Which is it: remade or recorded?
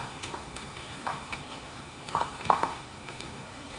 remade